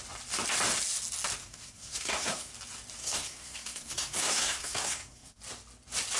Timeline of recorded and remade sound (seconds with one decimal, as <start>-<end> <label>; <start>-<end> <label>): 0.0-1.4 recorded; 1.4-2.5 remade; 2.5-3.0 recorded; 3.0-5.4 remade; 5.4-6.2 recorded